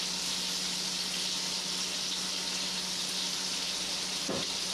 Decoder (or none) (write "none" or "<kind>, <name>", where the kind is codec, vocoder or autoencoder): none